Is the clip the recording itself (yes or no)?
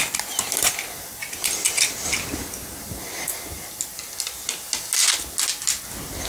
yes